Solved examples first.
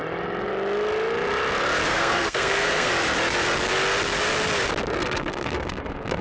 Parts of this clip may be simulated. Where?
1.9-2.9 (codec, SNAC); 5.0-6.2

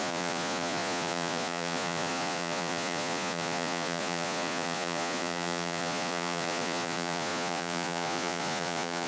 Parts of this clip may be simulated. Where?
0.0-9.1 (vocoder, Vocos)

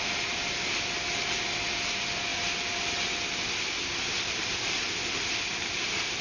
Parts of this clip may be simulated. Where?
none